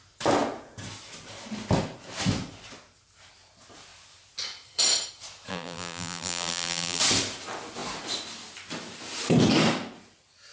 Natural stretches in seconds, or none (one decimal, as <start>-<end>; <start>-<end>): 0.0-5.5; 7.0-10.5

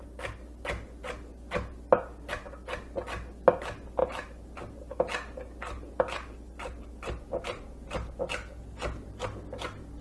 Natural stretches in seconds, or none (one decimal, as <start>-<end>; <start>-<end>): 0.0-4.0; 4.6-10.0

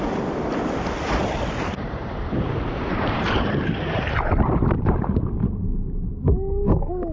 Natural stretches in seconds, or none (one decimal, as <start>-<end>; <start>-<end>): 0.0-1.2; 5.1-7.1

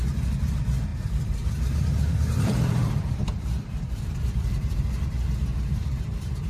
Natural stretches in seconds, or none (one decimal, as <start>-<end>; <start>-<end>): 0.0-0.9; 4.8-5.5

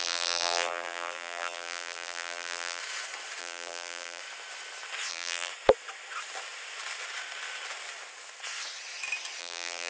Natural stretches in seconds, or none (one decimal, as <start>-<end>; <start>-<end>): 2.8-3.4; 4.2-5.1; 5.5-9.4